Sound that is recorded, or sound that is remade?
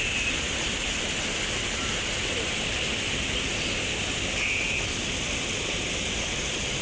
recorded